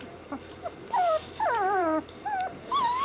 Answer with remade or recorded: remade